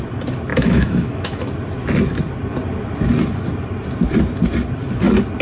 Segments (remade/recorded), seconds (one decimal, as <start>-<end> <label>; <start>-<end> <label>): 0.0-0.5 recorded; 0.5-1.4 remade; 1.4-5.4 recorded